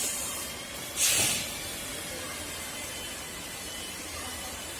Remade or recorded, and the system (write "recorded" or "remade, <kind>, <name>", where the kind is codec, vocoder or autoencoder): remade, vocoder, BigVGAN v2